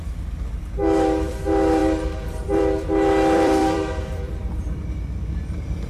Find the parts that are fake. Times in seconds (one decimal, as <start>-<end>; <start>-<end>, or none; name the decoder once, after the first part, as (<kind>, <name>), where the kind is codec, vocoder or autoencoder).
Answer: 1.8-4.8 (vocoder, BigVGAN v2)